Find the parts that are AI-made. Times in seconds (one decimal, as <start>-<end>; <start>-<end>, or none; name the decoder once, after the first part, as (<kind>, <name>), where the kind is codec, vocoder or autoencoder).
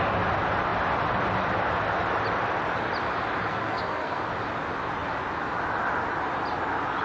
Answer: 3.5-4.2 (codec, SNAC)